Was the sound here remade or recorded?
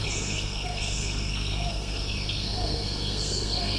remade